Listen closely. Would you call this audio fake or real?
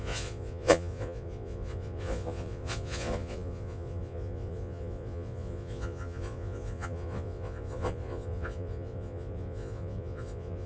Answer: fake